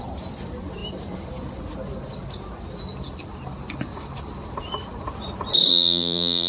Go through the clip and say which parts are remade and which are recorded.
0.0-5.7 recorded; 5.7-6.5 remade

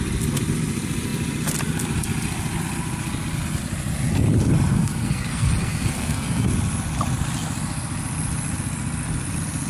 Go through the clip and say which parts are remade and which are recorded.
0.0-4.7 recorded; 4.7-6.5 remade; 6.5-9.7 recorded

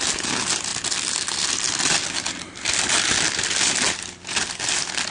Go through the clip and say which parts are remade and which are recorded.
0.0-5.1 recorded

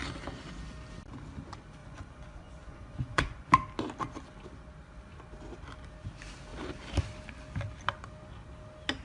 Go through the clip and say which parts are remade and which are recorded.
0.0-1.8 recorded; 1.8-3.5 remade; 3.5-9.0 recorded

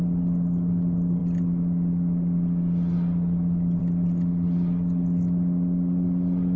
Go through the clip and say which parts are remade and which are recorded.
0.0-6.6 recorded